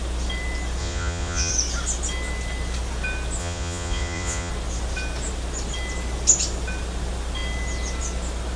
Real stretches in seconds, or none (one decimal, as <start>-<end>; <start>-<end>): 0.0-0.8; 1.5-3.4; 4.5-8.6